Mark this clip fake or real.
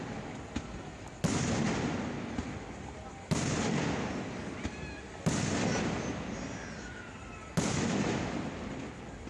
real